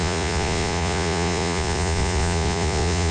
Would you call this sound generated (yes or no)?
yes